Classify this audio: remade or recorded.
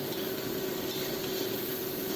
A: recorded